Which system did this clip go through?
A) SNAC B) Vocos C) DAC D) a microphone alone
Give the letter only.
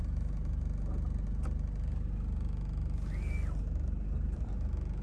D